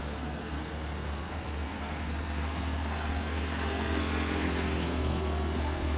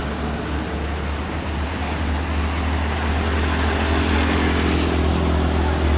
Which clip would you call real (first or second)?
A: second